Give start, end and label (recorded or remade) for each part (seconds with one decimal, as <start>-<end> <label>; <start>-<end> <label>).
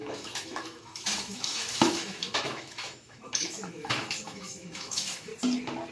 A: 0.0-5.3 remade; 5.3-5.9 recorded